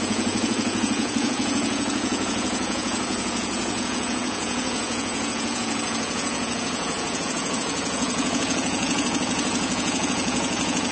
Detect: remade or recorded remade